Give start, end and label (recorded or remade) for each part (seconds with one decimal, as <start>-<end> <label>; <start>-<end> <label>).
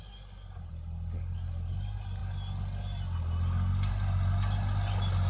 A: 0.0-5.3 recorded